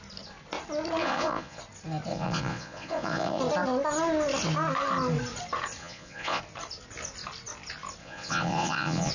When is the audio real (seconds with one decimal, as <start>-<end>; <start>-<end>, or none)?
0.0-1.0; 1.6-2.1; 3.4-5.8; 6.4-8.0